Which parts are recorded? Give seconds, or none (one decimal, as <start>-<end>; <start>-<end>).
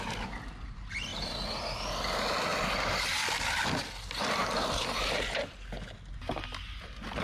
0.0-7.2